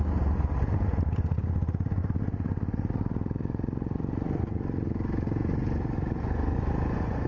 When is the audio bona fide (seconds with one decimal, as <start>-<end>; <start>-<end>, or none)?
0.0-5.4